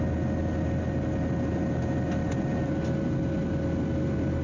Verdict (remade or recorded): recorded